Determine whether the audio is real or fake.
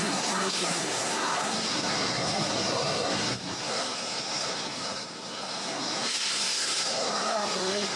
fake